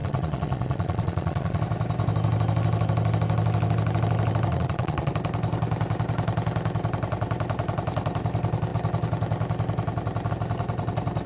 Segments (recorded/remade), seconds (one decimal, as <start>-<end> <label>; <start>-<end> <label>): 0.0-1.6 remade; 1.6-4.5 recorded; 4.5-5.1 remade; 5.1-11.3 recorded